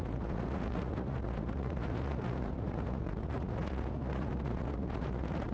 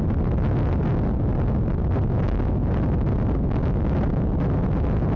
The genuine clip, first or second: second